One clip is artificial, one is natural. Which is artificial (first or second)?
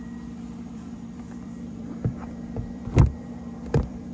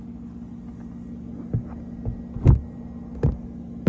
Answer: first